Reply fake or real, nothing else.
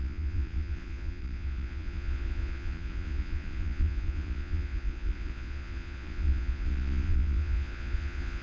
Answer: fake